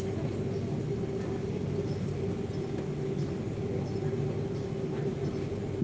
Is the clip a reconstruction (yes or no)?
no